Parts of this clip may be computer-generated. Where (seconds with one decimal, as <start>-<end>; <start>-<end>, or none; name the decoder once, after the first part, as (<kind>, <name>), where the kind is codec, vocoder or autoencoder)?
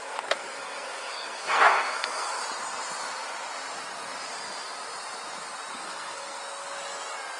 0.0-2.4 (codec, SNAC); 5.7-6.4